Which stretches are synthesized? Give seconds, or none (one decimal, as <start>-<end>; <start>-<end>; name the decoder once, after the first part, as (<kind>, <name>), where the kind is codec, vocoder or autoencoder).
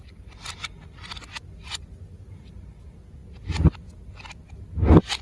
none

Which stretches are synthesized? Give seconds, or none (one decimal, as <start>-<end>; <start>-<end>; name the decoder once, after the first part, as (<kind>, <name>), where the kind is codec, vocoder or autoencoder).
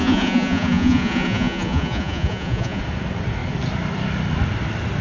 0.0-2.8 (vocoder, Vocos)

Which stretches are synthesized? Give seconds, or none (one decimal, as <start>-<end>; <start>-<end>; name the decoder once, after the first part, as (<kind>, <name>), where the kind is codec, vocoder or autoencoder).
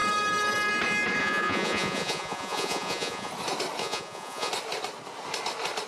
1.2-3.3 (vocoder, Vocos); 3.8-4.5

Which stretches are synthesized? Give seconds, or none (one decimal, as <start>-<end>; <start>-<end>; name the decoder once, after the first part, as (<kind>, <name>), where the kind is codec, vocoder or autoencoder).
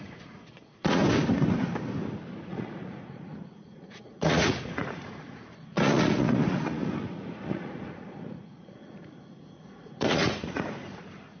0.0-1.0 (vocoder, Vocos); 2.4-11.4